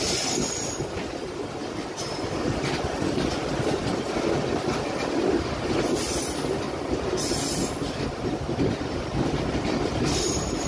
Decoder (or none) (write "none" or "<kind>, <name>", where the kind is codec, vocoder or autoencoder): none